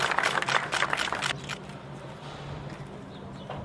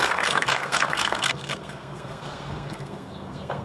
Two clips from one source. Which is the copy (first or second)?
second